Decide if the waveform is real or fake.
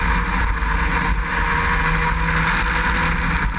real